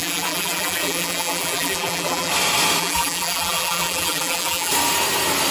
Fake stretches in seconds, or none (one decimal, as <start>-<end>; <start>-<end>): 0.0-2.3; 2.8-4.7